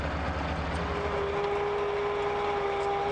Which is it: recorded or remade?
recorded